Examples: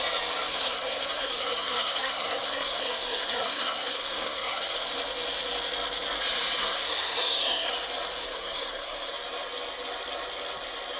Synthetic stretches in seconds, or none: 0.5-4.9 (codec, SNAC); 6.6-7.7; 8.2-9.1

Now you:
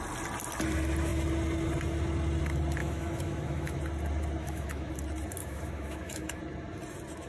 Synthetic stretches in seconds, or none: 2.8-3.8 (autoencoder, DAC-VAE); 4.4-4.9; 5.4-6.4

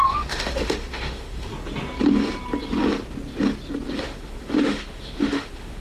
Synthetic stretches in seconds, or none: 0.0-1.5 (autoencoder, DAC-VAE); 4.0-5.8

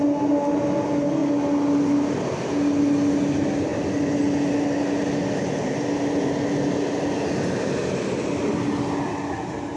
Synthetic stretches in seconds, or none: none

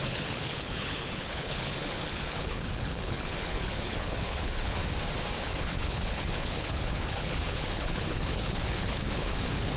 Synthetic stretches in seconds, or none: 0.0-4.8 (codec, HILCodec); 5.4-9.8